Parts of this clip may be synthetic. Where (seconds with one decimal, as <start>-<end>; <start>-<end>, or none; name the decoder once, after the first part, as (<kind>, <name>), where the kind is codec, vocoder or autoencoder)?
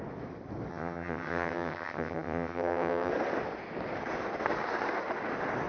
0.7-3.1 (vocoder, HiFi-GAN)